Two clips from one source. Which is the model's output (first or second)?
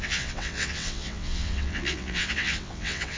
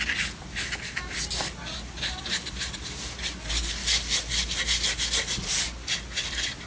first